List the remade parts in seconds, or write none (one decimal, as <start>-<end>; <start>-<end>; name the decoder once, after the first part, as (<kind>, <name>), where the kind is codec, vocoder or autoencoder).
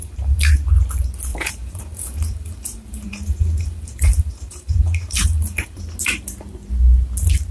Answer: 0.0-0.5 (vocoder, BigVGAN v2); 1.3-5.8